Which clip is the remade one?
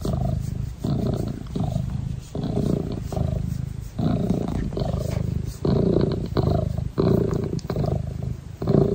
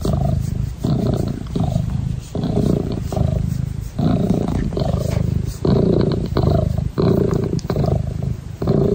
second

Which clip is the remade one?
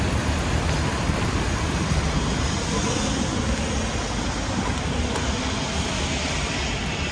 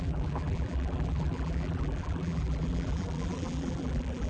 second